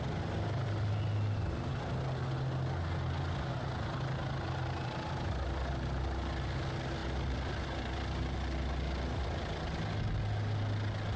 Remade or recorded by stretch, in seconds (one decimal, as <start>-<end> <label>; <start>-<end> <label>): 0.0-11.2 recorded